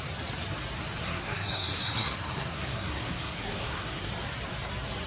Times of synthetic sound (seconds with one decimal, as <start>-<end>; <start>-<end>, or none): 1.0-4.1